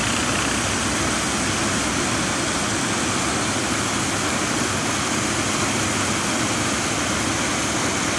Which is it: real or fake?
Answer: real